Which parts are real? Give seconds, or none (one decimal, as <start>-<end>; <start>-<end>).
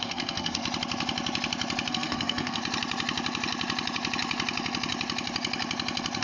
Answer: 0.6-1.9; 2.6-6.2